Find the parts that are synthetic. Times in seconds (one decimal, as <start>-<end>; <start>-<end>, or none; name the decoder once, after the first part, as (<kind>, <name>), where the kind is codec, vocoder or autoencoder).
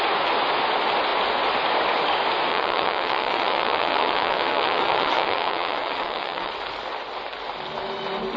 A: 2.5-6.5 (vocoder, WaveNeXt)